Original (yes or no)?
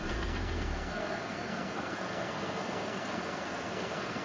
no